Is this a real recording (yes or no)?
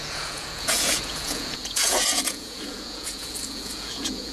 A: no